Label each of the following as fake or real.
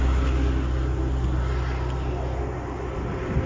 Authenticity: real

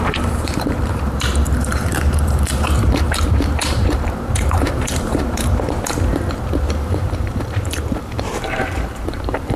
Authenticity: fake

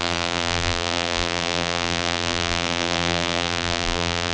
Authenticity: fake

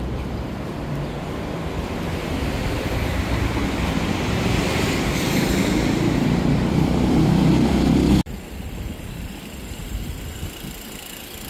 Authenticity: fake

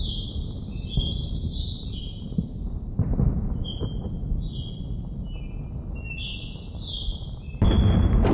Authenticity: real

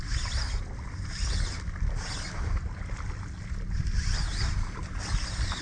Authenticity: real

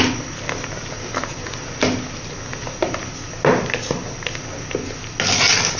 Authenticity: real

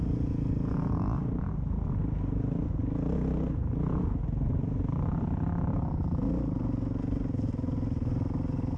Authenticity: real